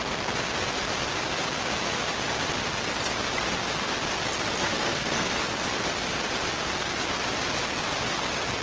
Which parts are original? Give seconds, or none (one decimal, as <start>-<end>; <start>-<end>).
0.0-4.6; 5.4-8.6